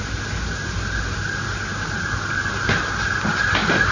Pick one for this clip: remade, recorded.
recorded